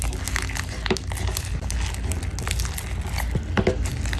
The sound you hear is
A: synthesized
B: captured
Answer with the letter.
B